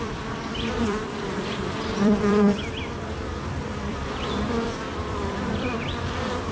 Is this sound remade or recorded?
remade